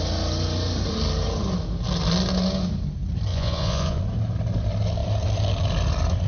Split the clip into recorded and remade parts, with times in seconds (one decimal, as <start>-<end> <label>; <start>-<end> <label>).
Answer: 0.0-3.3 recorded; 3.3-4.0 remade; 4.0-6.3 recorded